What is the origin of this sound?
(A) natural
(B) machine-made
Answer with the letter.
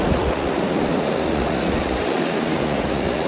B